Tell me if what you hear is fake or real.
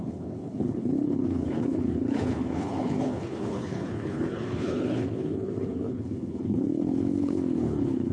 fake